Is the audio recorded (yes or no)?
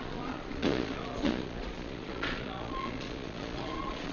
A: no